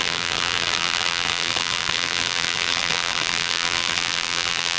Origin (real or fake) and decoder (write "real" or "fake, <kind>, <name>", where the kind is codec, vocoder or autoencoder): fake, vocoder, BigVGAN v2